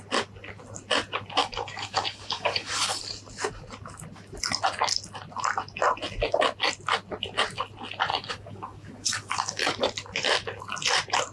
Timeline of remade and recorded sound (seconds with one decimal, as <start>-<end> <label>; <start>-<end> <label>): 0.0-1.4 recorded; 1.4-3.0 remade; 3.0-8.1 recorded; 8.1-9.8 remade; 9.8-11.3 recorded